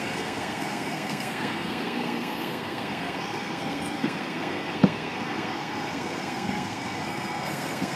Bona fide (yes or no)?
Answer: no